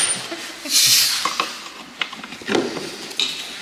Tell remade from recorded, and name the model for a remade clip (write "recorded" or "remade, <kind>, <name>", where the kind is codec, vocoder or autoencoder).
recorded